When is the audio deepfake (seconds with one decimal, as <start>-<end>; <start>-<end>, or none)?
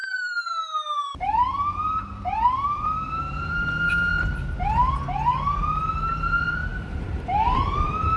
0.0-3.9; 6.7-8.2